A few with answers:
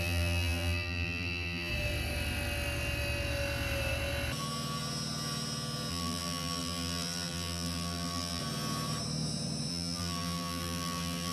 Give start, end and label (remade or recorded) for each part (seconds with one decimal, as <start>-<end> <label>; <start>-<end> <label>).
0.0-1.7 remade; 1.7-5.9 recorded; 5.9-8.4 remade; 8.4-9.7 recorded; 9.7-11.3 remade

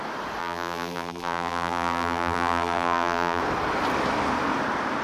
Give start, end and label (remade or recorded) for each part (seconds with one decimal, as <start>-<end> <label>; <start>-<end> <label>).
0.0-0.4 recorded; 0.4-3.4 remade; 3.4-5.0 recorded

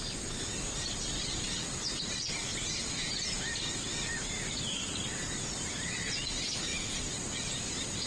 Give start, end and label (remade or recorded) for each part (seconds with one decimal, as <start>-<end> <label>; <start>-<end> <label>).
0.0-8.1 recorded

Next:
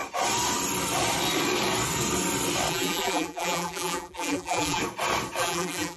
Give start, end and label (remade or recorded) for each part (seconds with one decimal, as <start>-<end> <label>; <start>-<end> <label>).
0.0-2.7 recorded; 2.7-4.8 remade; 4.8-5.4 recorded; 5.4-6.0 remade

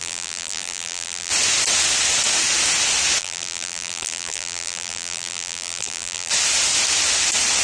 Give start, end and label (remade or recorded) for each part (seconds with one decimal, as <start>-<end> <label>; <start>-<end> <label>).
0.0-1.3 remade; 1.3-3.2 recorded; 3.2-6.3 remade; 6.3-7.6 recorded